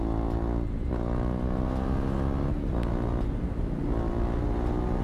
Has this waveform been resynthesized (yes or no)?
no